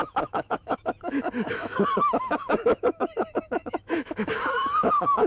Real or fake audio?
fake